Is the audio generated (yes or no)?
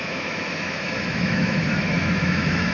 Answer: yes